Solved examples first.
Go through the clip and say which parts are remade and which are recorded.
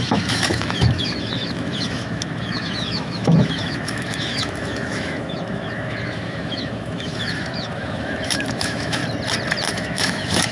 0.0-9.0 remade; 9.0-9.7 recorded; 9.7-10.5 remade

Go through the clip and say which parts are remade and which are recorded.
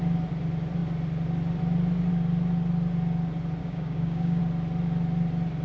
0.0-3.6 recorded; 3.6-4.4 remade; 4.4-5.6 recorded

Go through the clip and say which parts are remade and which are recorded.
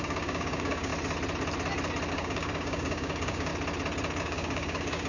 0.0-0.9 remade; 0.9-2.1 recorded; 2.1-3.5 remade; 3.5-4.2 recorded; 4.2-5.1 remade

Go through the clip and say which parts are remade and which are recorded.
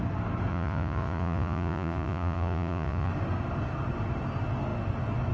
0.0-0.5 recorded; 0.5-3.1 remade; 3.1-5.3 recorded